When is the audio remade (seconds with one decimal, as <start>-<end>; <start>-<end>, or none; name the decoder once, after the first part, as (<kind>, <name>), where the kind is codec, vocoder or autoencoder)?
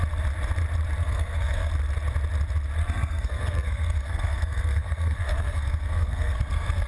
1.0-1.7 (codec, SNAC); 2.8-6.9